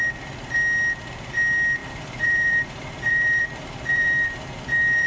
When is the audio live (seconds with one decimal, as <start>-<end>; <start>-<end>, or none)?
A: 0.0-1.8